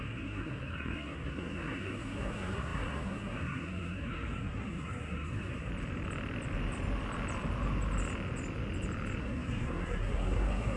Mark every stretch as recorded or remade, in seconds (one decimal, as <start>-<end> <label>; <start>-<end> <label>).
0.0-5.7 remade; 5.7-9.2 recorded; 9.2-10.8 remade